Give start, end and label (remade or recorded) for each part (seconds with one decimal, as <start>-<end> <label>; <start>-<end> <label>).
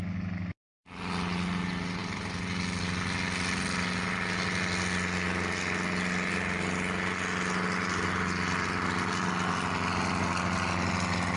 0.0-11.4 recorded